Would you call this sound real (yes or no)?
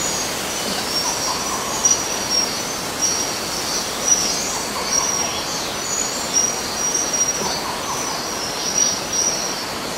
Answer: yes